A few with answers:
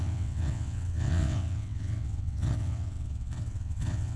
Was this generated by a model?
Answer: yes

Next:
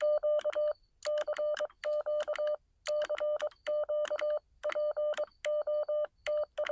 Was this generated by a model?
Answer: no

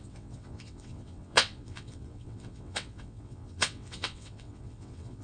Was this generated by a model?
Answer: yes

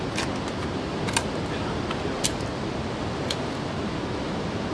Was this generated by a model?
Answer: no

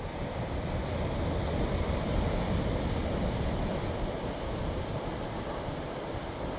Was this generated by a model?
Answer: no